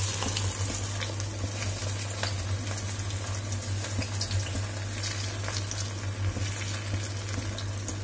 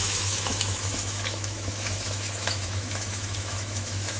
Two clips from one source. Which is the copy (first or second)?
second